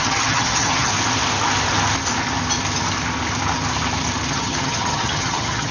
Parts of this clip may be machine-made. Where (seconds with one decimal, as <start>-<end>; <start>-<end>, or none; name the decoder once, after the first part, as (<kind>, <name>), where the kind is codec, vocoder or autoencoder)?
0.0-0.9 (vocoder, HiFi-GAN); 4.3-5.7